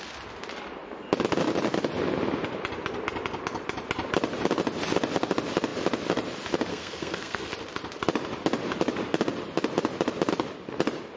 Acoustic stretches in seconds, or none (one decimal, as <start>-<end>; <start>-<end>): 0.0-6.7; 7.5-11.2